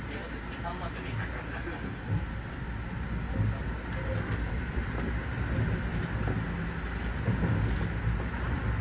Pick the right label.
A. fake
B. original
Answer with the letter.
B